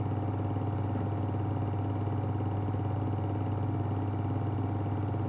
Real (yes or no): yes